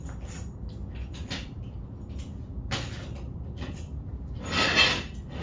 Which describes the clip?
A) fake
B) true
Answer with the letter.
B